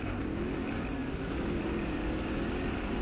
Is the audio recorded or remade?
recorded